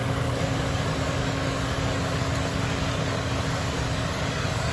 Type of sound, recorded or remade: remade